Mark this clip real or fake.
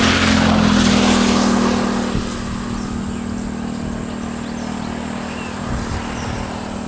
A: real